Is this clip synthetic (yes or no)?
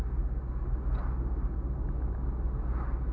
no